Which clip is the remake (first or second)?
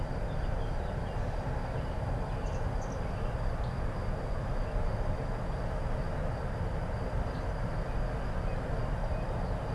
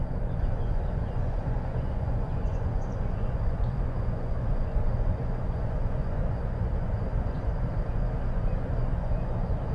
second